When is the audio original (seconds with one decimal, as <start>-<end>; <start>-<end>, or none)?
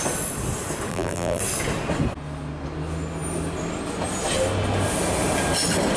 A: 0.0-0.9; 1.4-6.0